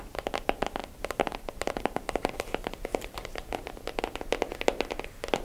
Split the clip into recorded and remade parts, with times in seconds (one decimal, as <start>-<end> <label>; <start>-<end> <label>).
0.0-0.8 recorded; 0.8-4.0 remade; 4.0-5.4 recorded